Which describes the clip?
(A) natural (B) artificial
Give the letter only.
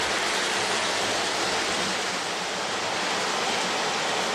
A